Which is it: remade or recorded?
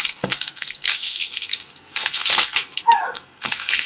remade